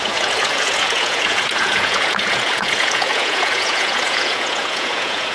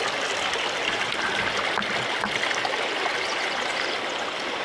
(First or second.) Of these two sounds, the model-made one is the first